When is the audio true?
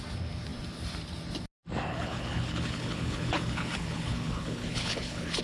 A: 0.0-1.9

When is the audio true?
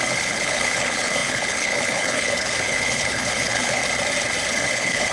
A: 3.8-4.5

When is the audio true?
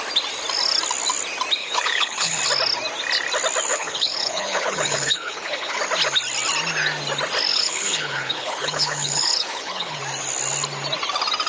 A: 0.0-1.6; 2.4-3.7; 5.8-7.5; 10.0-11.5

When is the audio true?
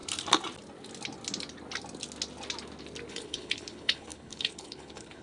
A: 0.0-3.1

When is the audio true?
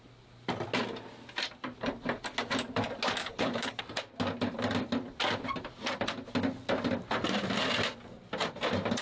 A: 0.0-3.2; 3.8-9.0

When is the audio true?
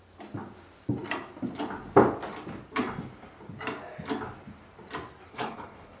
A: 0.0-5.3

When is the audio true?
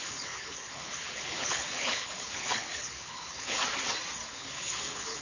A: 3.6-4.3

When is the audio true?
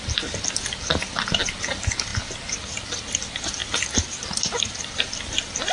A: 0.0-5.7